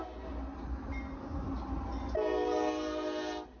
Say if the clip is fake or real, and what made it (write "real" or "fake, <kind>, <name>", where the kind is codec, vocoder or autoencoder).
real